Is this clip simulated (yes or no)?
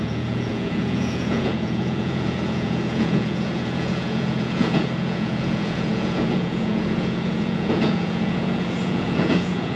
yes